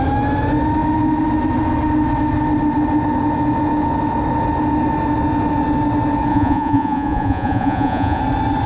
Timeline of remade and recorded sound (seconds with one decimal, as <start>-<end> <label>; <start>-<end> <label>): 0.0-6.3 recorded; 6.3-8.2 remade; 8.2-8.7 recorded